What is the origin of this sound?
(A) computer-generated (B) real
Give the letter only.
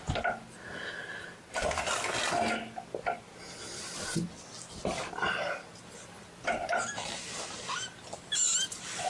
B